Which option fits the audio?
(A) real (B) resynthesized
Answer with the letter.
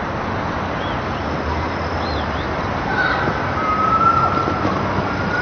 A